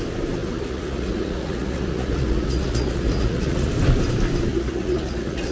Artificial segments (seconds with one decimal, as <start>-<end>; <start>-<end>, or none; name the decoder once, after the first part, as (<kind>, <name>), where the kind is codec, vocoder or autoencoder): 0.4-3.7 (vocoder, Vocos); 4.5-5.5